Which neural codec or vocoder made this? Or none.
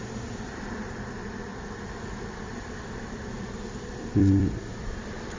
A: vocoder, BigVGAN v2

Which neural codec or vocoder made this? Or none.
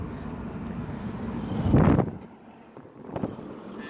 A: none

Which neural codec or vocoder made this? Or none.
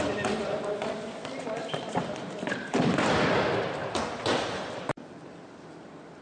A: vocoder, BigVGAN v2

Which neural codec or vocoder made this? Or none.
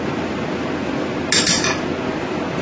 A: none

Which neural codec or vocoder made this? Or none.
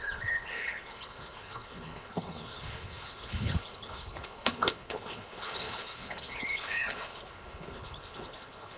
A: codec, HILCodec